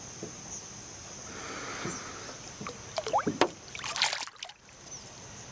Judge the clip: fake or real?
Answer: real